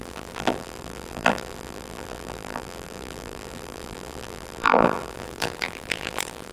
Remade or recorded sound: remade